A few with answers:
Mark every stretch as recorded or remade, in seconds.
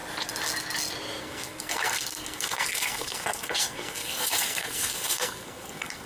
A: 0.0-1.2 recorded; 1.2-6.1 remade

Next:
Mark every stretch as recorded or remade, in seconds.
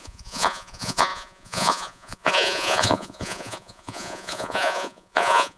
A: 0.0-5.6 remade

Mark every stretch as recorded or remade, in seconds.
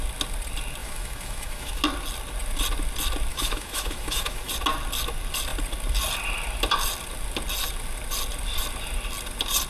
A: 0.0-0.8 recorded; 0.8-1.8 remade; 1.8-3.3 recorded; 3.3-4.5 remade; 4.5-9.7 recorded